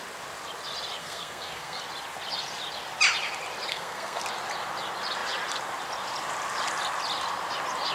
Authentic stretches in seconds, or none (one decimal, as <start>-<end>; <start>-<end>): 0.0-1.0; 1.8-3.7; 4.2-7.9